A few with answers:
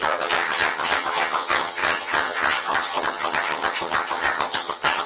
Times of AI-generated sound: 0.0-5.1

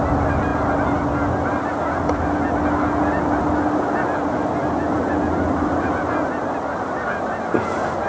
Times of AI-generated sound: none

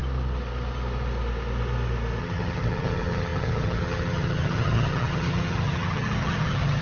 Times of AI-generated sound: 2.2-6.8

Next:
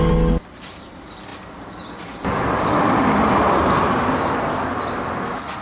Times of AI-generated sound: none

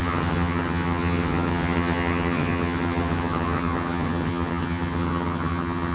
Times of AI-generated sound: 0.0-5.9

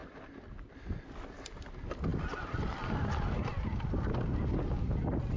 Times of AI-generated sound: none

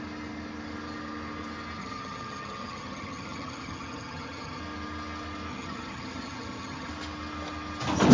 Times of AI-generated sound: 1.8-4.6; 5.5-6.9

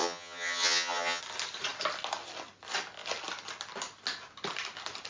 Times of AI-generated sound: 0.0-1.2